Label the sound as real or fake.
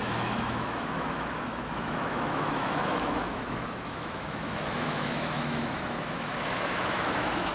fake